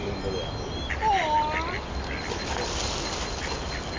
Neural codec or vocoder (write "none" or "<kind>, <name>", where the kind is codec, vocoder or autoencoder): none